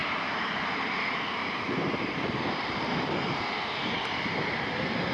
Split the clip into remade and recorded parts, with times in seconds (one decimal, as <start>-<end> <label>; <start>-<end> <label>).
0.0-0.6 remade; 0.6-1.4 recorded; 1.4-4.5 remade; 4.5-5.1 recorded